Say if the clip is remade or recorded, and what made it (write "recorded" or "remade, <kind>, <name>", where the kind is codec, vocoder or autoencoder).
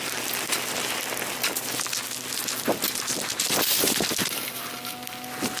recorded